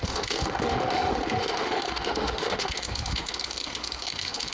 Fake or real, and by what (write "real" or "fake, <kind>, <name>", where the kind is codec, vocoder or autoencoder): fake, autoencoder, DAC-VAE